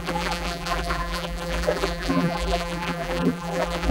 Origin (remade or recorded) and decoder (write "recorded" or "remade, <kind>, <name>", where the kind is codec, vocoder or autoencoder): remade, vocoder, BigVGAN v2